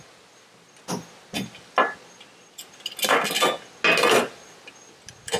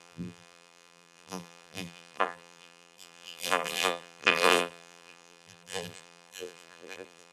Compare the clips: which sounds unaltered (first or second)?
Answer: first